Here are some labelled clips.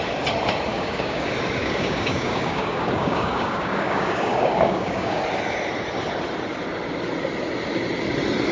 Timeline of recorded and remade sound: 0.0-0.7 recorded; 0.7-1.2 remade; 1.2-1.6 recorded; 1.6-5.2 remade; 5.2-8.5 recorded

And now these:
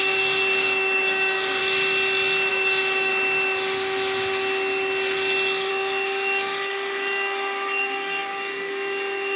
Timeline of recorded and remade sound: 0.0-1.6 remade; 1.6-2.5 recorded; 2.5-3.1 remade; 3.1-5.7 recorded; 5.7-9.4 remade

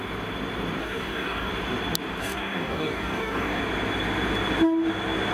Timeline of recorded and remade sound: 0.0-0.8 recorded; 0.8-1.5 remade; 1.5-2.2 recorded; 2.2-3.6 remade; 3.6-5.3 recorded

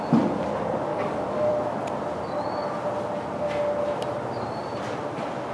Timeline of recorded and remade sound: 0.0-0.9 recorded; 0.9-1.5 remade; 1.5-5.5 recorded

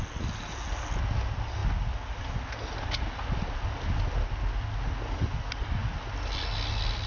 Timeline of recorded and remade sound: 0.0-7.1 recorded